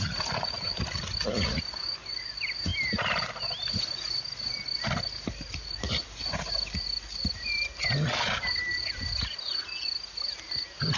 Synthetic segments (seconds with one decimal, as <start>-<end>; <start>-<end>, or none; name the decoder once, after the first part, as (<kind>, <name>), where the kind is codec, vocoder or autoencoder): none